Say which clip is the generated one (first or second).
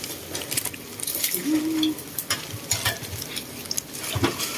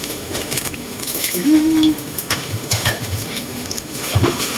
second